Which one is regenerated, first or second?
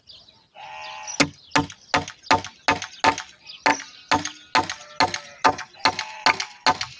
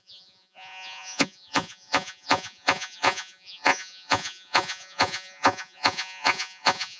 second